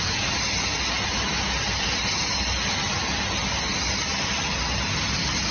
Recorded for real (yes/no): yes